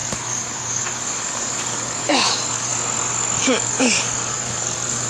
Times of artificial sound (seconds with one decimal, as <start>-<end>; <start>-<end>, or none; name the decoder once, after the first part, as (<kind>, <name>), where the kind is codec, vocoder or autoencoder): 0.0-2.7 (codec, DAC); 3.4-5.1